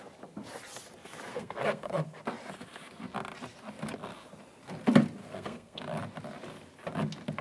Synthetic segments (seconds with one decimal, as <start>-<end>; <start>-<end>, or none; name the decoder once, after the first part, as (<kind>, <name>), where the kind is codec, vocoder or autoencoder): 1.3-2.2 (codec, SNAC); 5.2-5.8